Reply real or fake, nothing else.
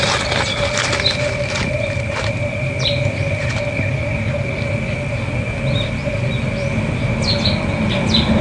real